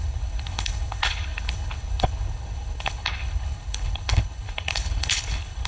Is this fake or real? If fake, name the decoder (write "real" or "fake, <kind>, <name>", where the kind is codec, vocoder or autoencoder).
fake, codec, HILCodec